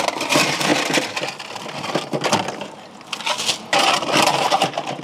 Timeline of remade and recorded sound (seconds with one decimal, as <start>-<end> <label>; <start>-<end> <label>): 0.0-0.7 remade; 0.7-3.7 recorded; 3.7-5.0 remade